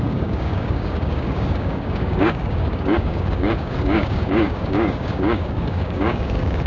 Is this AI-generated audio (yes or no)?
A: yes